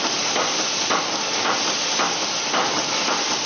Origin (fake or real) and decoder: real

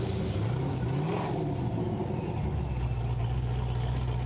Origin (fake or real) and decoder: real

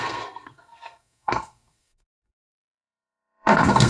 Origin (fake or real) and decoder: fake, codec, SNAC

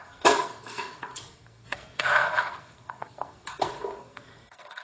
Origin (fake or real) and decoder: fake, codec, SNAC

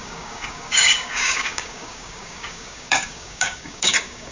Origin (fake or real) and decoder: fake, codec, DAC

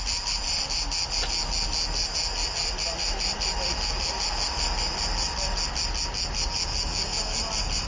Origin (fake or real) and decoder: real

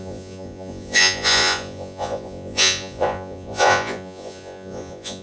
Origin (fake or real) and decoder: fake, vocoder, Vocos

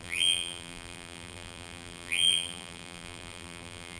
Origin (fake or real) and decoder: fake, vocoder, BigVGAN v2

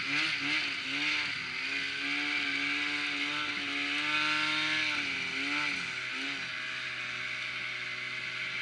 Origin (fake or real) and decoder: real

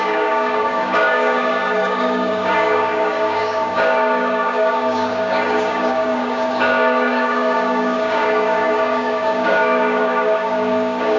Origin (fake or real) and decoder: fake, codec, DAC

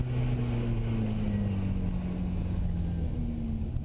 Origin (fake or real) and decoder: real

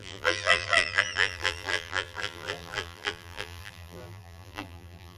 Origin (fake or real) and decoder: fake, vocoder, BigVGAN v2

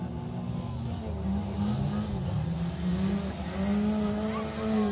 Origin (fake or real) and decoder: real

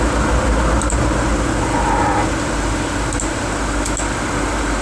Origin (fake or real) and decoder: real